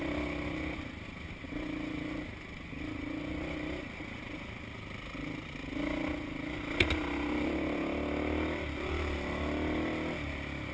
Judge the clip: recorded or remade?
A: recorded